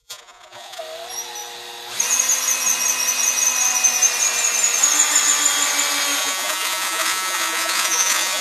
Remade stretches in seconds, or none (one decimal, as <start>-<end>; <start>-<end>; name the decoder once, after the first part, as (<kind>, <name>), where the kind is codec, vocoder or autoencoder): 0.0-0.8 (vocoder, Vocos); 6.2-8.4